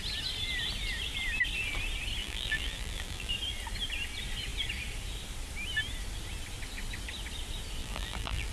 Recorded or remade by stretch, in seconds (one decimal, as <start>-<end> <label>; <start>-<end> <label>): 0.0-2.2 recorded; 2.2-3.3 remade; 3.3-7.8 recorded; 7.8-8.5 remade